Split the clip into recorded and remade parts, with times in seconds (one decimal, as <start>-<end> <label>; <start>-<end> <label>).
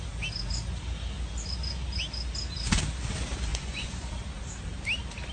0.0-3.5 recorded; 3.5-4.1 remade; 4.1-5.3 recorded